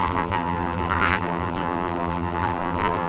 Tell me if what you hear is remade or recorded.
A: remade